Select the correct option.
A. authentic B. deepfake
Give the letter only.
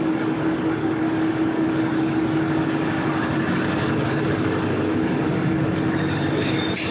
B